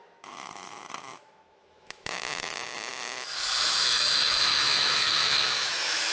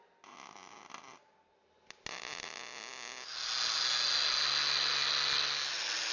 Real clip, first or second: second